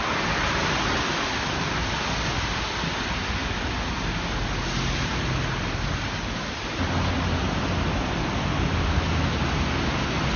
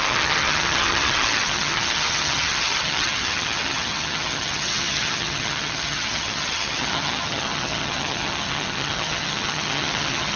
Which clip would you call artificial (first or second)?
second